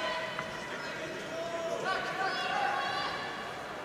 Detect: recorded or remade recorded